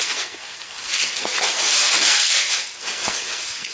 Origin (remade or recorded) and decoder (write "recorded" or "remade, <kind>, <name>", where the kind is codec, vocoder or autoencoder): remade, codec, SNAC